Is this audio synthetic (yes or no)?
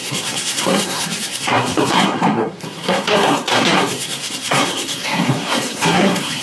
yes